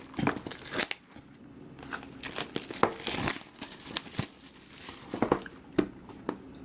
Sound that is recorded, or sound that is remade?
recorded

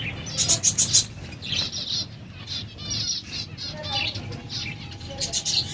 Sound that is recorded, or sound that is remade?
recorded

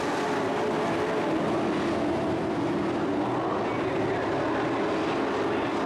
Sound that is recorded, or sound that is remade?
recorded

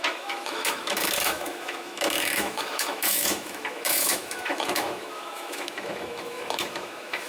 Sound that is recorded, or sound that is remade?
remade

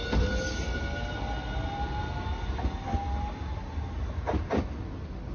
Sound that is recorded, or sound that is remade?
recorded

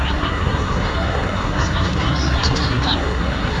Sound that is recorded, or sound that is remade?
remade